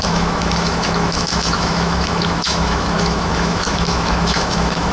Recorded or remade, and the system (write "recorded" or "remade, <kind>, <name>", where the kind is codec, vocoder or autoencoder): remade, autoencoder, DAC-VAE